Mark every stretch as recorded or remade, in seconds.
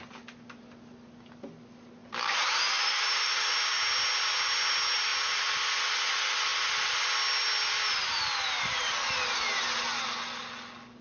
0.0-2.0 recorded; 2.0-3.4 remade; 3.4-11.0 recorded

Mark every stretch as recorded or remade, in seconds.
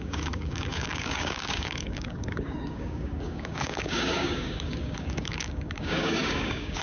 0.0-6.8 remade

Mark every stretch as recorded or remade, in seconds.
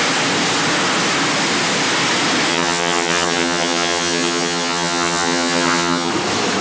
0.0-2.5 recorded; 2.5-6.1 remade; 6.1-6.6 recorded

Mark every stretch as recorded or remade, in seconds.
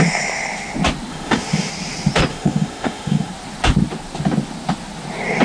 0.0-1.1 recorded; 1.1-1.7 remade; 1.7-2.3 recorded; 2.3-3.3 remade; 3.3-5.4 recorded